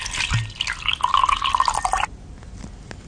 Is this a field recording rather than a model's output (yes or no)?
yes